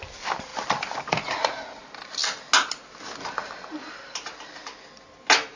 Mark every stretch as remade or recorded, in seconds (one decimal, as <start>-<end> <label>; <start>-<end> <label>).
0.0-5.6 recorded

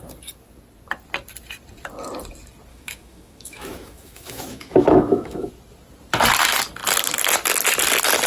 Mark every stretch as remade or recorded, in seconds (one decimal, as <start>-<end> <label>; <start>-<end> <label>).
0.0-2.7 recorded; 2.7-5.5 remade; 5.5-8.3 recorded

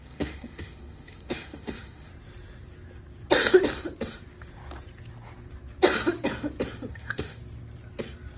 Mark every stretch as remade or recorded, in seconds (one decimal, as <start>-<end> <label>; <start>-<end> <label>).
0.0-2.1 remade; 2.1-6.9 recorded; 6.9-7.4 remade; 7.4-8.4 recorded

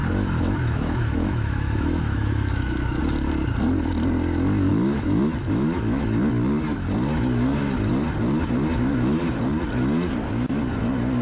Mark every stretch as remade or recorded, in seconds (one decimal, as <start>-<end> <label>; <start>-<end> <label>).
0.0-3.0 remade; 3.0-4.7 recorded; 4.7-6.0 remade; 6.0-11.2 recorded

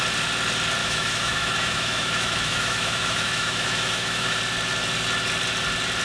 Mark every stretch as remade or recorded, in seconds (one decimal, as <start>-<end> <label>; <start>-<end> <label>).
0.0-0.8 recorded; 0.8-4.4 remade; 4.4-6.0 recorded

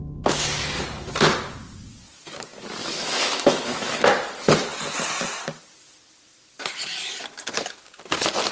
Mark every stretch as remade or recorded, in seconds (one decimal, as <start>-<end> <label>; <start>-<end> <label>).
0.0-2.8 recorded; 2.8-4.0 remade; 4.0-8.5 recorded

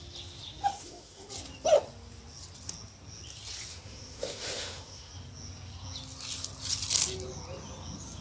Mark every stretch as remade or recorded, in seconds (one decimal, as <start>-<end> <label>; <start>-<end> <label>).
0.0-0.7 recorded; 0.7-1.3 remade; 1.3-3.7 recorded; 3.7-5.1 remade; 5.1-8.2 recorded

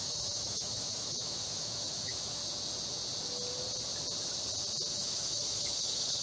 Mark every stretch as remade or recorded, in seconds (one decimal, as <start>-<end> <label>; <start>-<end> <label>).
0.0-2.4 remade; 2.4-4.9 recorded; 4.9-6.2 remade